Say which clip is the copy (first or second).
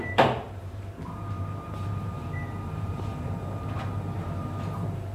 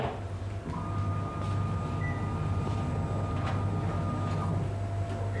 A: first